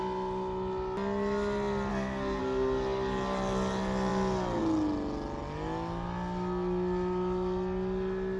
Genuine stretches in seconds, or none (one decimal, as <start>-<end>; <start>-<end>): 0.0-1.9; 2.4-8.4